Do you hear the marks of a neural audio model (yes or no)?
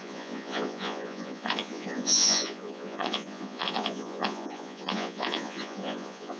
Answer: yes